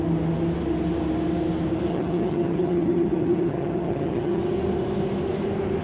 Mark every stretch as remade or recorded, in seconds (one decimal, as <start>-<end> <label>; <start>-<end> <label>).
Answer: 0.0-1.9 recorded; 1.9-4.4 remade; 4.4-5.8 recorded